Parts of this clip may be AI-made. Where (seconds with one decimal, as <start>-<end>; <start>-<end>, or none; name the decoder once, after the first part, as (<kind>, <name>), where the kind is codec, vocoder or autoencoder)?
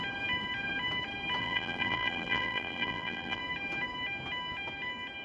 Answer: 1.4-3.4 (vocoder, BigVGAN v2)